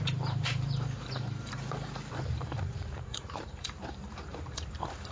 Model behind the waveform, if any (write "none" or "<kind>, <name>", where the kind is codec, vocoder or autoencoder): vocoder, BigVGAN v2